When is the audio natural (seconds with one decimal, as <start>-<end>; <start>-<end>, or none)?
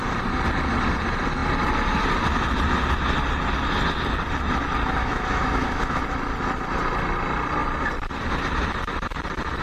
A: 0.0-5.0; 6.0-9.6